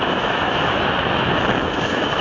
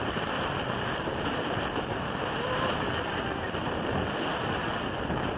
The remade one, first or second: first